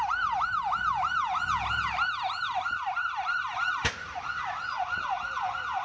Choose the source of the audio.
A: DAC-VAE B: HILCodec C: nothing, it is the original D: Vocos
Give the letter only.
C